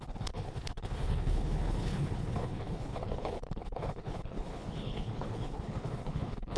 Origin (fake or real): fake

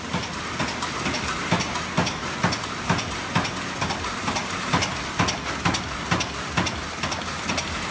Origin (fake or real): real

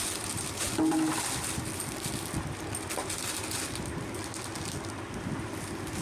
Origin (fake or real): real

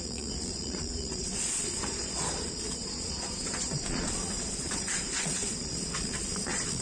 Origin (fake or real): fake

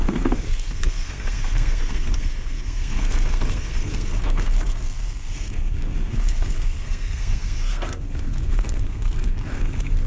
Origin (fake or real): fake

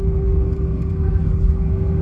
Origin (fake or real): fake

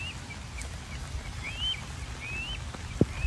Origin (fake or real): real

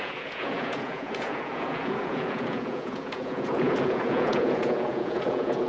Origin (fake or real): fake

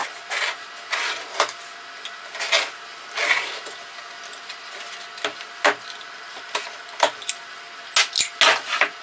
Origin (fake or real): real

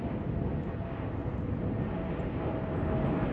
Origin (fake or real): real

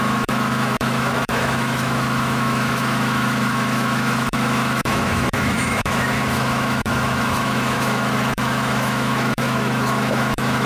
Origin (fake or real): fake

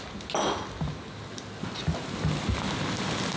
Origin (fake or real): real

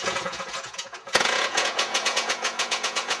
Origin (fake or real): fake